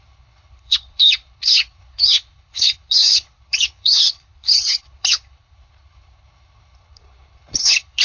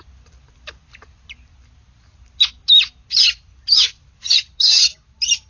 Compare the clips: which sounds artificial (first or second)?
first